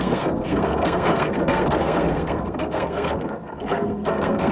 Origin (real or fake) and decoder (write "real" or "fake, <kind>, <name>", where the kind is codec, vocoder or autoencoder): fake, codec, SNAC